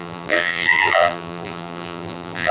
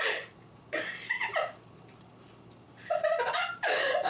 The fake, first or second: first